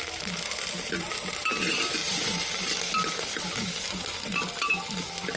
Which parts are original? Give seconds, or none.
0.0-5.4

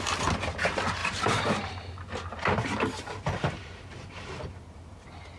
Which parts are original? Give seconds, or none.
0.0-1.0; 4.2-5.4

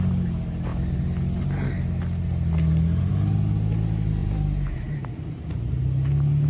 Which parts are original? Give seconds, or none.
0.0-4.2; 5.7-6.5